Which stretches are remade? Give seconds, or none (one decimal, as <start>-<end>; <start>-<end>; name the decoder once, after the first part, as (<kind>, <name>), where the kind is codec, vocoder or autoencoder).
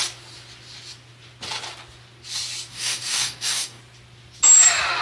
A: 2.7-3.8 (codec, DAC)